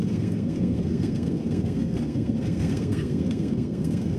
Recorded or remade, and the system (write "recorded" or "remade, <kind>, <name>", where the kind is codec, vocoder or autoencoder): remade, codec, SNAC